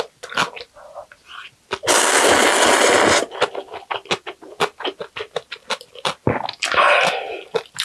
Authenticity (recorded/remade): recorded